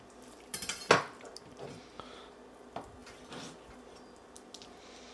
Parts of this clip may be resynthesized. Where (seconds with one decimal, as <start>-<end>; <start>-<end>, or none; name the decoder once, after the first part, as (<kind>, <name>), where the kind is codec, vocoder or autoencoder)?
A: none

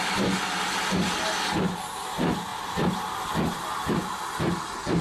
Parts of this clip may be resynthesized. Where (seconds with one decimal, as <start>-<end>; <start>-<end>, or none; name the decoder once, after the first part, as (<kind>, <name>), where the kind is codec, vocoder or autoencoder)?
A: none

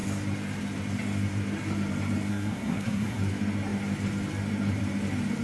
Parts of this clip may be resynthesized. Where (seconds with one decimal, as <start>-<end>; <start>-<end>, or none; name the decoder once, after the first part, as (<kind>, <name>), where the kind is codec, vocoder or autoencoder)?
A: 2.3-3.2 (codec, SNAC)

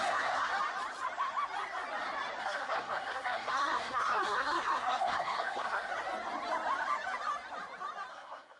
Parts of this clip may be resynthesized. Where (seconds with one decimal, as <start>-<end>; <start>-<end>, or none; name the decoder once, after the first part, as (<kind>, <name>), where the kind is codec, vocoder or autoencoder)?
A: 0.0-0.5 (codec, SNAC); 2.4-5.9; 8.1-8.6

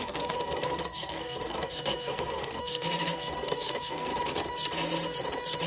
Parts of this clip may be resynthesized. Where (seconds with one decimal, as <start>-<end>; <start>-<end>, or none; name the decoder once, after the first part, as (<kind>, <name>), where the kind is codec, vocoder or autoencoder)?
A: 0.0-4.1 (codec, SNAC)

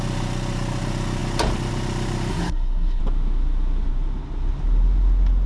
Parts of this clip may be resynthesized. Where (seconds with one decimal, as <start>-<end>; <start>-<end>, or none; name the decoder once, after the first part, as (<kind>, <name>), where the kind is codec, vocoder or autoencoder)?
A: 2.3-3.0 (codec, SNAC)

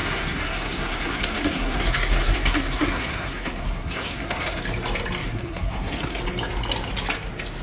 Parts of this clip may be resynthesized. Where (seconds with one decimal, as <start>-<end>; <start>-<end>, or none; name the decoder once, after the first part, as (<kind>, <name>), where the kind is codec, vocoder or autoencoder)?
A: 0.0-4.6 (codec, SNAC); 5.2-6.2

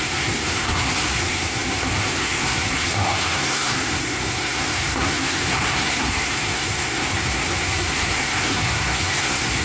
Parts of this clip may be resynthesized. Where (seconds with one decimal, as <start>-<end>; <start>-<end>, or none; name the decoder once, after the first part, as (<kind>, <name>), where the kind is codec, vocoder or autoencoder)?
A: 0.0-9.6 (codec, SNAC)